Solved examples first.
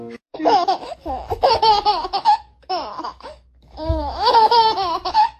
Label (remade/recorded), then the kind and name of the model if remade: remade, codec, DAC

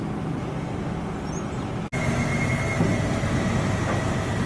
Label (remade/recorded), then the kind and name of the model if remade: recorded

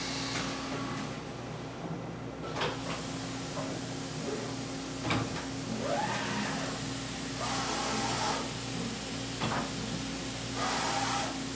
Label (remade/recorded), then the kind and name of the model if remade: recorded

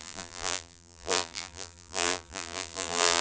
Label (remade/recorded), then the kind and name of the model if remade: remade, vocoder, BigVGAN v2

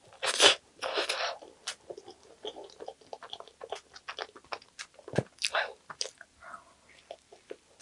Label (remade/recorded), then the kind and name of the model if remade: recorded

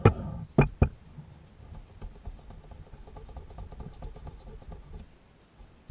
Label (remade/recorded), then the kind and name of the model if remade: recorded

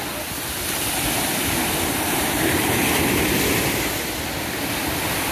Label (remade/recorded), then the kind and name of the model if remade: recorded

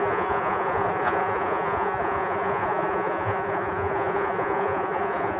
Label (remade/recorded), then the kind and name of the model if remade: remade, vocoder, Vocos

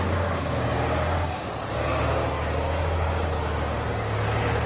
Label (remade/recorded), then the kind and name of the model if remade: remade, codec, DAC